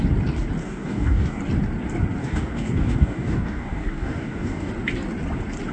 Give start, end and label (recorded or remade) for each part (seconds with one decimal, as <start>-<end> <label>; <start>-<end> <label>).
0.0-0.6 recorded; 0.6-1.4 remade; 1.4-2.2 recorded; 2.2-4.7 remade; 4.7-5.7 recorded

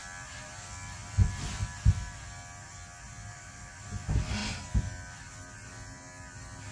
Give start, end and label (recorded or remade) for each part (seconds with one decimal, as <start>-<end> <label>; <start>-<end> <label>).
0.0-3.3 recorded; 3.3-3.9 remade; 3.9-6.7 recorded

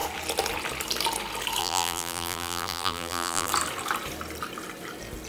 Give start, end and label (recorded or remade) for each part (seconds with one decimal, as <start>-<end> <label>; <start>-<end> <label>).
0.0-1.6 recorded; 1.6-3.5 remade; 3.5-5.3 recorded

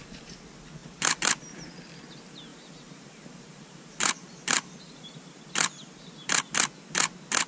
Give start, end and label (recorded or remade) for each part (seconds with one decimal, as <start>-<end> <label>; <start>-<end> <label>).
0.0-2.5 recorded; 2.5-5.4 remade; 5.4-7.5 recorded

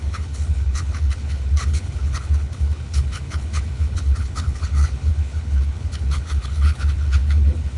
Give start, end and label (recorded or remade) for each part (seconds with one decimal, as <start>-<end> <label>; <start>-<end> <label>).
0.0-7.8 remade